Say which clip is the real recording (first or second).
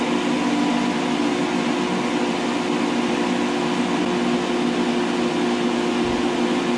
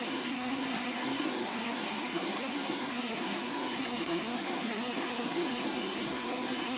first